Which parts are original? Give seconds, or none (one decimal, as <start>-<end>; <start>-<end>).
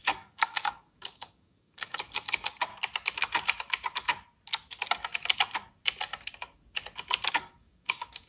2.7-7.3